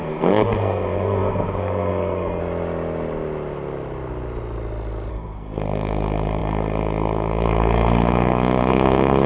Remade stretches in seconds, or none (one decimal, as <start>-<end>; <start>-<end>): 0.0-2.4; 5.1-9.3